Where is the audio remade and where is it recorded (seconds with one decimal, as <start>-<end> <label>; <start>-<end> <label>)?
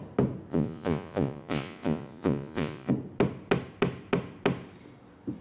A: 0.0-0.5 recorded; 0.5-2.9 remade; 2.9-5.4 recorded